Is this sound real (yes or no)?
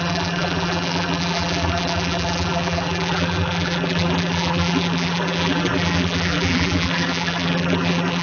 no